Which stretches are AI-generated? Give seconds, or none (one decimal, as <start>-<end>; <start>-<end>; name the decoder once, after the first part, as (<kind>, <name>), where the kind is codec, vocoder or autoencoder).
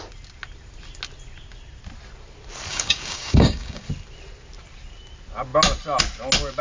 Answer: 2.7-3.8 (codec, DAC)